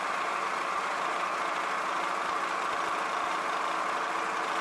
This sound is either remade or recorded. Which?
recorded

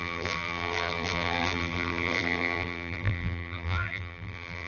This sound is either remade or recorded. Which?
remade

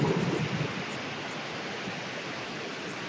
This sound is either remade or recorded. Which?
recorded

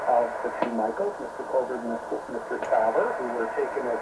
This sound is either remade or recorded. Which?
recorded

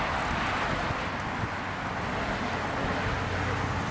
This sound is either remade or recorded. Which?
recorded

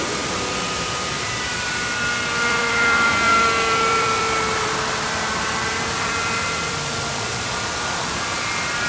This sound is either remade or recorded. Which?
remade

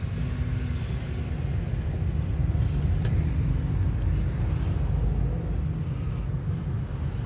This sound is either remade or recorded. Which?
recorded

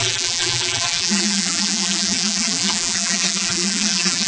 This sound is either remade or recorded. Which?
remade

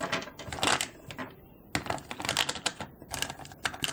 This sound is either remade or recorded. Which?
recorded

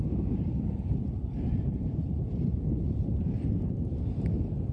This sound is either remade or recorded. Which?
remade